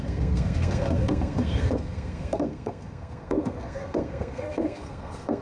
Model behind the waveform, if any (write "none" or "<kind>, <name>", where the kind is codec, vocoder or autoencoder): codec, SNAC